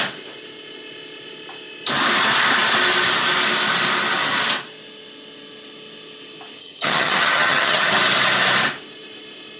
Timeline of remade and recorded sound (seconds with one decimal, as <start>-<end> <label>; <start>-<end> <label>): 0.0-6.6 recorded; 6.6-7.9 remade; 7.9-9.6 recorded